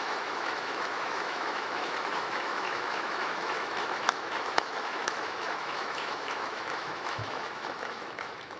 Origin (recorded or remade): remade